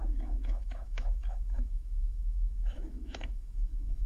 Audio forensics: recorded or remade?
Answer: remade